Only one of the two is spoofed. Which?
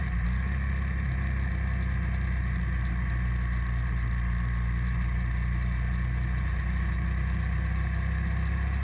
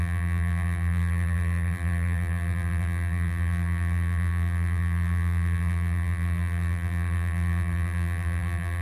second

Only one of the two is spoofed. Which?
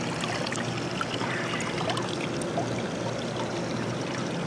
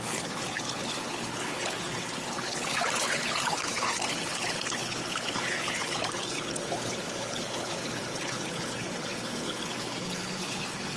second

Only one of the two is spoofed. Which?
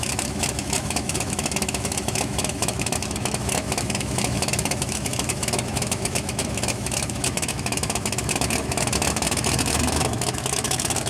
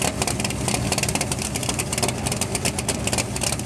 first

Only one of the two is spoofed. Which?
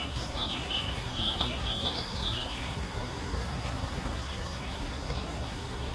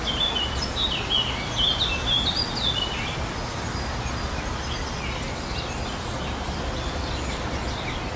first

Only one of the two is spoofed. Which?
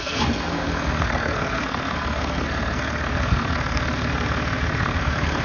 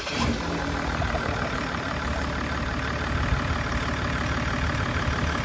first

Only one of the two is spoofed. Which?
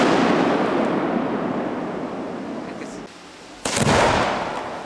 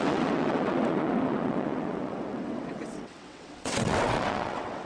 second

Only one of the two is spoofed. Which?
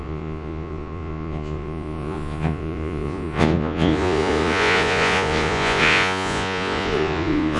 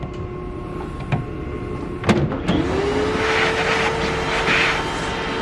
first